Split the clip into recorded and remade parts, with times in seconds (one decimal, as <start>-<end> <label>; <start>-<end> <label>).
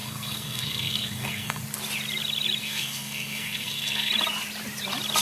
0.0-1.6 remade; 1.6-2.6 recorded; 2.6-4.1 remade; 4.1-5.2 recorded